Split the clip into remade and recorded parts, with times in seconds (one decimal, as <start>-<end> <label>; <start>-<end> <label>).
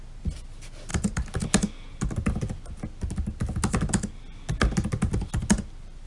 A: 0.0-6.1 recorded